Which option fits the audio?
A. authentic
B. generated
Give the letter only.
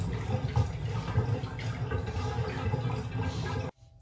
A